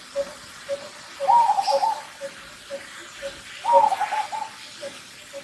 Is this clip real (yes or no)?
yes